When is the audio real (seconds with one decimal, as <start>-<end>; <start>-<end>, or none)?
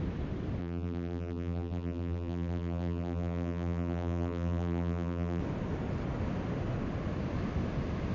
0.0-0.6; 5.4-8.1